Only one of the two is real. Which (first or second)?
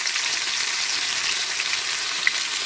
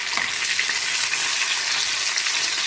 second